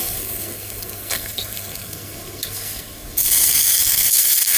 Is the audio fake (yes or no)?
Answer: yes